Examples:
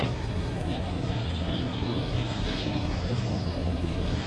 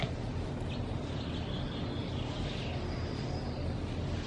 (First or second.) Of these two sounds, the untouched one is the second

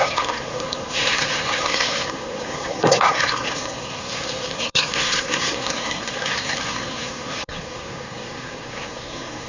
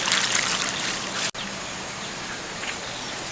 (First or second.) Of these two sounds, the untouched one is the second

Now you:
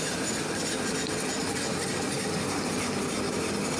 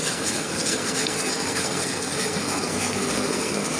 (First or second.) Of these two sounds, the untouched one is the first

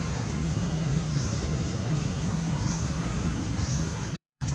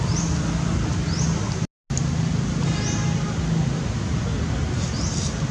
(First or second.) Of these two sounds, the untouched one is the second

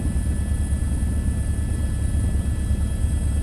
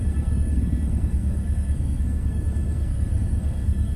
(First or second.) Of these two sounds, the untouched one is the first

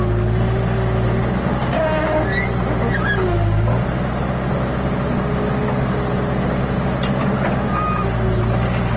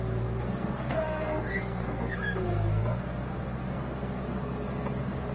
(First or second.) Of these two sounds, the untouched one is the first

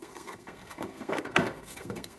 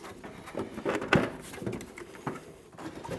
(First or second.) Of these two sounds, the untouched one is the second